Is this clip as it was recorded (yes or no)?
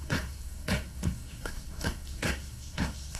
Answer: no